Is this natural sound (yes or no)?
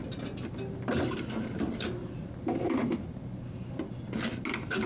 yes